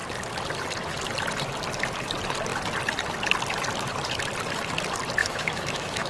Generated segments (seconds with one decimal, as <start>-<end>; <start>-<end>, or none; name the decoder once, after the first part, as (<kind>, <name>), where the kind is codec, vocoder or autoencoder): 5.2-6.1 (autoencoder, DAC-VAE)